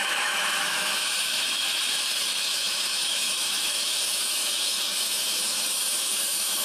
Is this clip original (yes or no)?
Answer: no